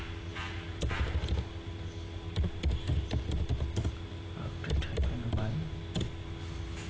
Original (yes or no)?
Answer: yes